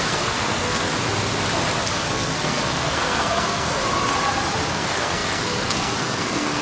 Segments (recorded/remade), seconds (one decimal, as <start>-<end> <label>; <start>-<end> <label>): 0.0-0.9 remade; 0.9-2.0 recorded; 2.0-3.8 remade; 3.8-4.7 recorded; 4.7-6.6 remade